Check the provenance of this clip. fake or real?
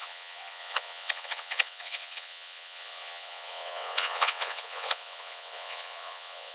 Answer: fake